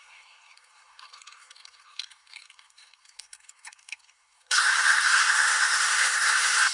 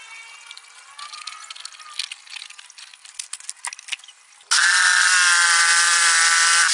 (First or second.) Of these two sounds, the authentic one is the second